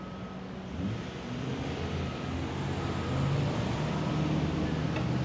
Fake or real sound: real